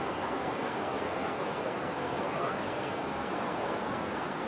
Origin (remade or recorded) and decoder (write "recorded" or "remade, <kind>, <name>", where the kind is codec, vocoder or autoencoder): remade, codec, SNAC